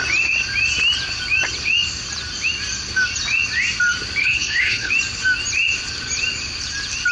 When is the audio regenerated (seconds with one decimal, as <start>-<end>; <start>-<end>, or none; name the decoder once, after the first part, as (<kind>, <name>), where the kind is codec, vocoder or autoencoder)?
4.2-4.9 (codec, HILCodec)